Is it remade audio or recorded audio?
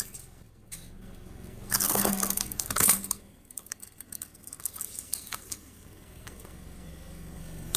remade